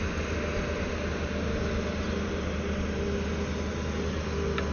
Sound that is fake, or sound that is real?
real